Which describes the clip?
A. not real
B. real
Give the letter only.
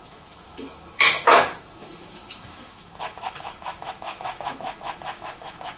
A